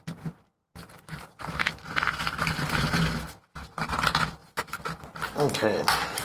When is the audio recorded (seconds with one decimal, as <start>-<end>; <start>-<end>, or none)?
0.0-0.6; 1.7-2.2; 2.9-6.2